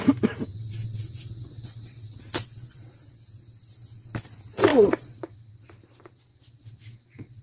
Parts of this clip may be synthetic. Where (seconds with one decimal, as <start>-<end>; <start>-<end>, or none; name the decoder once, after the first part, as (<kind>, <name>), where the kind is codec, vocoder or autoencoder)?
0.5-3.3 (vocoder, WaveNeXt); 4.7-5.5; 6.3-7.4